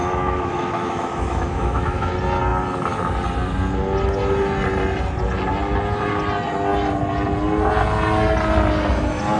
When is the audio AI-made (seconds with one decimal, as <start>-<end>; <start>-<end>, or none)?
0.0-2.1